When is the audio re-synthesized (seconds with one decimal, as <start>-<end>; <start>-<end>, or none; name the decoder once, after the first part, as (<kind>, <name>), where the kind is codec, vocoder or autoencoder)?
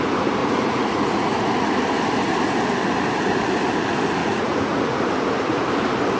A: 0.4-1.8 (vocoder, Vocos); 4.2-5.0